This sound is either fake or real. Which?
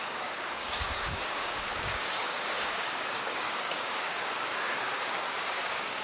fake